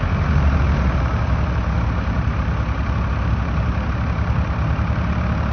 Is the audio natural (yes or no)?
yes